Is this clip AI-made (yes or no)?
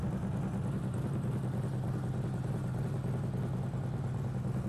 no